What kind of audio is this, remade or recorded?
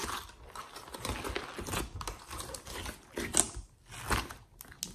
recorded